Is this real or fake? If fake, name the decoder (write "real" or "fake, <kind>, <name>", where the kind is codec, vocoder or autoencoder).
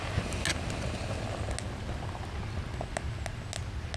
real